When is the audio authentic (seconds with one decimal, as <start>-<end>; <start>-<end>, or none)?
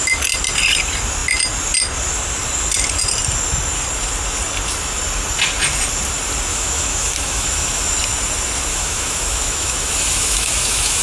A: 0.0-6.5; 7.9-8.7